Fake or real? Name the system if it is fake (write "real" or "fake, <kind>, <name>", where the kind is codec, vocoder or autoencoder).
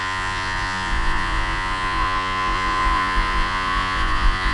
fake, vocoder, Vocos